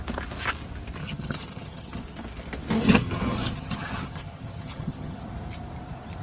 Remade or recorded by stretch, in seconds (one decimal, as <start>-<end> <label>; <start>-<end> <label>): 0.0-1.0 recorded; 1.0-2.0 remade; 2.0-2.8 recorded; 2.8-5.2 remade; 5.2-6.2 recorded